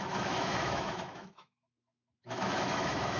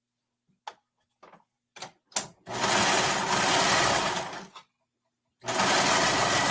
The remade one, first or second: first